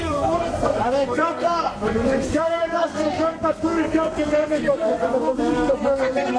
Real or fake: fake